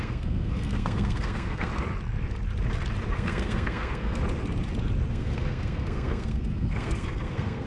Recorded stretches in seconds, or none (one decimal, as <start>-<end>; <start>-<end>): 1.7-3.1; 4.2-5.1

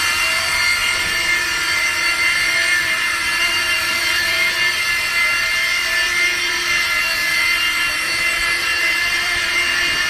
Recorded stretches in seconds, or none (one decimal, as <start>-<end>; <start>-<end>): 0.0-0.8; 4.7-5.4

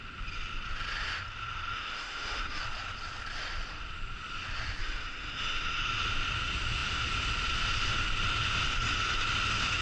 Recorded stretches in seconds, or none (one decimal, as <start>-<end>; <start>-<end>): 0.0-1.7; 2.6-4.8; 5.8-9.8

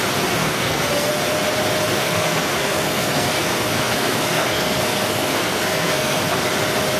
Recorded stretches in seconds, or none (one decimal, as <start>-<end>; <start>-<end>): 0.0-0.4; 1.1-2.0; 6.2-7.0